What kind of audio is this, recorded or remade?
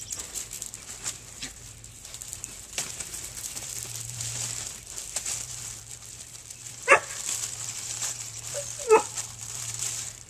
remade